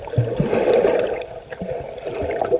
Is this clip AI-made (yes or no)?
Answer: no